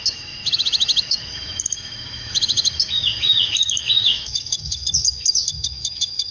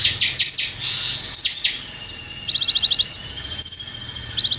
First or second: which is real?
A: second